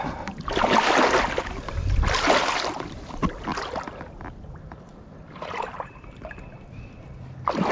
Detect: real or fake real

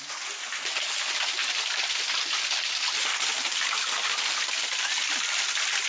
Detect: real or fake real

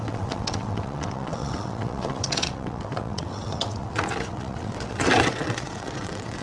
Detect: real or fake fake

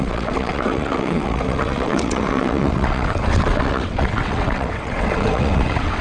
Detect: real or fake fake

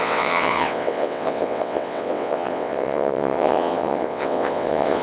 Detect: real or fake fake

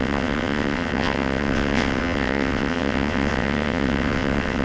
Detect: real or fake fake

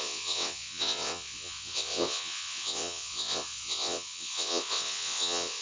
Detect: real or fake fake